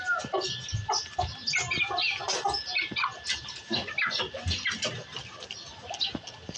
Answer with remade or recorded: recorded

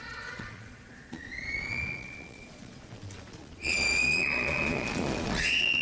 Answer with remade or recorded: remade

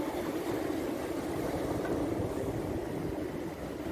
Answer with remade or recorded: recorded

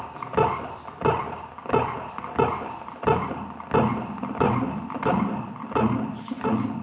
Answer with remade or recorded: recorded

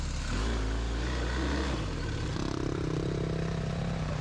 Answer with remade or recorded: recorded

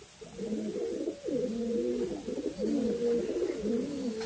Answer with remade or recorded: recorded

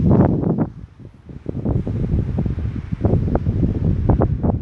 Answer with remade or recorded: recorded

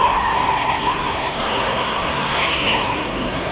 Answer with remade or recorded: remade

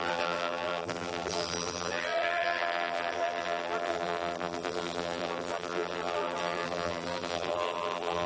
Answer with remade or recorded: remade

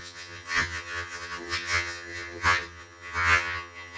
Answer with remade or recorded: remade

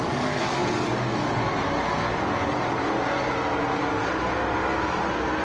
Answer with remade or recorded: recorded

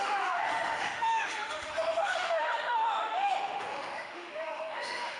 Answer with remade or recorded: remade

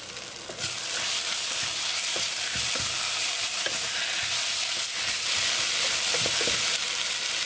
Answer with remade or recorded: recorded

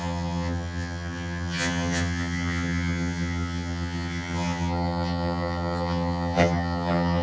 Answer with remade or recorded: remade